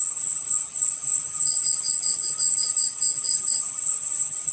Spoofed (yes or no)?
yes